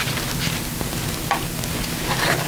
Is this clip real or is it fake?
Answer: real